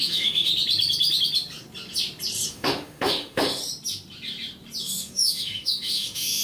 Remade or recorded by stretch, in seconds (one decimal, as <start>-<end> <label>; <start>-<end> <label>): 0.0-0.5 remade; 0.5-2.5 recorded; 2.5-3.6 remade; 3.6-4.8 recorded; 4.8-6.4 remade